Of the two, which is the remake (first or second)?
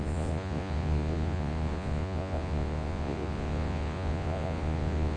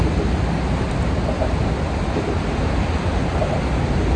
first